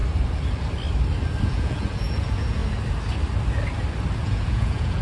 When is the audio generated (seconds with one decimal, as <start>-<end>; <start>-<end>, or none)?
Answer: 1.4-2.6; 4.2-5.0